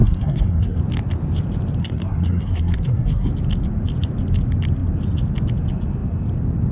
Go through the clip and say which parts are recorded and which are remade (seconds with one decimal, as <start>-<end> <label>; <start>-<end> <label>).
0.0-0.8 remade; 0.8-1.8 recorded; 1.8-3.3 remade; 3.3-6.7 recorded